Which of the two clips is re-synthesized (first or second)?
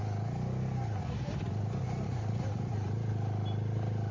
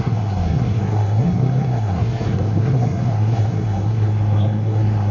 second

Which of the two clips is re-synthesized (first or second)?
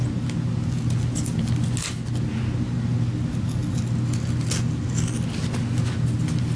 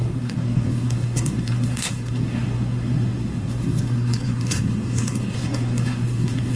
second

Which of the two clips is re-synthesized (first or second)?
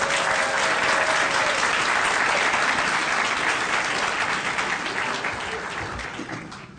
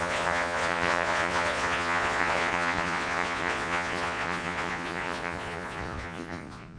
second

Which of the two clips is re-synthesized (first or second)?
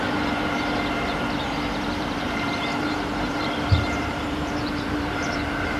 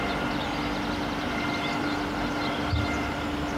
first